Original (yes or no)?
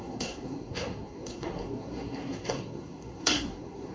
no